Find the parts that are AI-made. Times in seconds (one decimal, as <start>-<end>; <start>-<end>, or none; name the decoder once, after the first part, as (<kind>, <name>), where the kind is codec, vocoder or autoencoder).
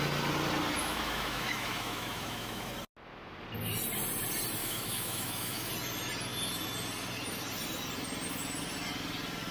0.8-2.7 (autoencoder, DAC-VAE); 4.6-5.7